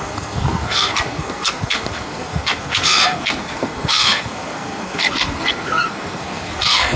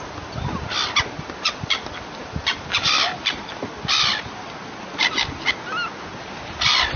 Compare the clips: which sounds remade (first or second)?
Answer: first